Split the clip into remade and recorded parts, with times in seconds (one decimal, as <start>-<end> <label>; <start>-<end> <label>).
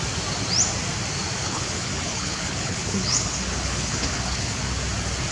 0.0-1.4 recorded; 1.4-4.6 remade; 4.6-5.3 recorded